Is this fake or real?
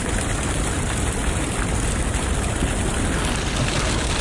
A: real